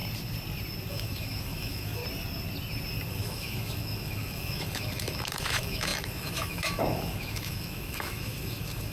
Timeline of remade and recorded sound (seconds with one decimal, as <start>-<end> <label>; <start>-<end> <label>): 0.0-0.9 recorded; 0.9-2.0 remade; 2.0-3.1 recorded; 3.1-8.9 remade